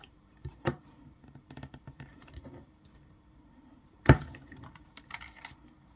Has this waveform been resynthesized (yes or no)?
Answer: yes